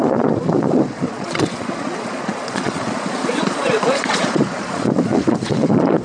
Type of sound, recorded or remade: remade